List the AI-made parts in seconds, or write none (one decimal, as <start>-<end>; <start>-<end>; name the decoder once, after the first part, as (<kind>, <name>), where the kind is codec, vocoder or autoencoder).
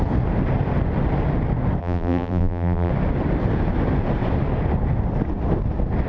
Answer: 1.8-2.9 (vocoder, BigVGAN v2)